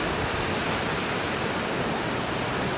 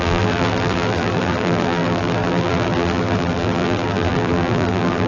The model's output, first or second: second